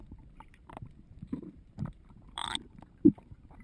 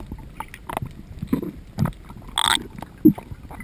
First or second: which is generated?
first